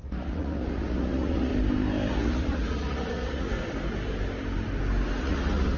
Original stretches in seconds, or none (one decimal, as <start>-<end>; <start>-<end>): 1.5-2.1; 3.5-5.2